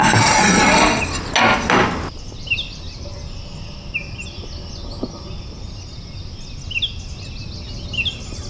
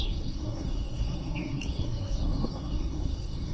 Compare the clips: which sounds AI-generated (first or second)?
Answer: second